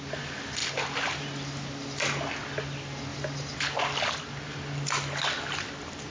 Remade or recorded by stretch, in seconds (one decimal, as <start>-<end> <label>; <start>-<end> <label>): 0.0-6.1 recorded